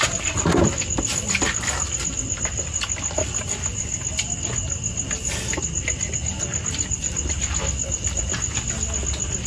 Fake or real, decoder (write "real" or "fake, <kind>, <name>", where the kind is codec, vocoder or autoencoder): real